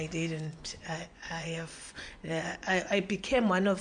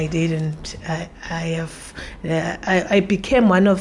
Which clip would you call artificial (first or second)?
first